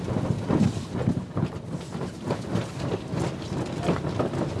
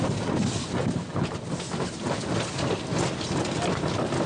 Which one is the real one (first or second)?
second